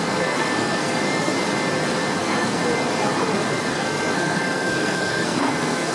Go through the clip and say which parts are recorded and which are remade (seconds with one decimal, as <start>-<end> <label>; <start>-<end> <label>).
0.0-1.3 remade; 1.3-2.2 recorded; 2.2-2.6 remade; 2.6-3.7 recorded; 3.7-5.9 remade